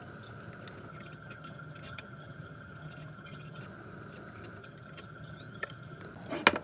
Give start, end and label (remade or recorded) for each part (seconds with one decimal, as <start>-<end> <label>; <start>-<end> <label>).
0.0-0.9 recorded; 0.9-3.6 remade; 3.6-4.6 recorded; 4.6-6.0 remade; 6.0-6.6 recorded